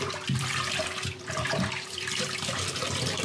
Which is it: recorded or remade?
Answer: remade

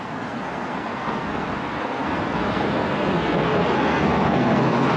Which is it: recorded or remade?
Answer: remade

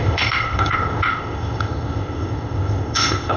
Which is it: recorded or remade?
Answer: remade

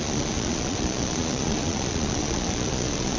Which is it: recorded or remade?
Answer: remade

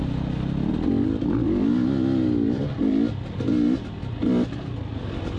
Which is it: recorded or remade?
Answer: recorded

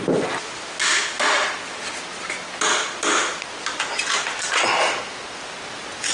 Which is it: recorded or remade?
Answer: recorded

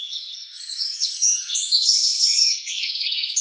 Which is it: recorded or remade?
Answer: remade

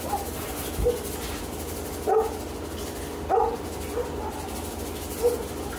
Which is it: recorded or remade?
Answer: recorded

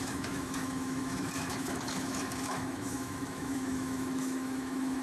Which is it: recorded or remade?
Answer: remade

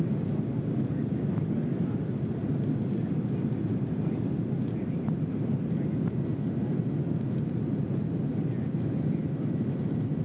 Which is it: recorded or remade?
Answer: recorded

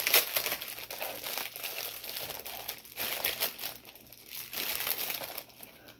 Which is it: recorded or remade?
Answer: recorded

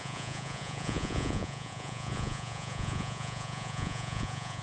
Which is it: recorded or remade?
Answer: remade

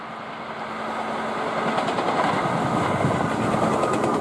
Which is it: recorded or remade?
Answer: recorded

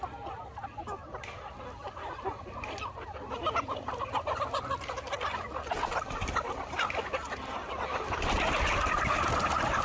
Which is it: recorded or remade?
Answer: recorded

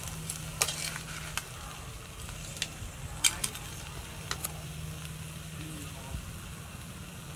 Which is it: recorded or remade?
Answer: recorded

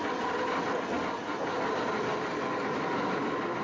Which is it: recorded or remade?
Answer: recorded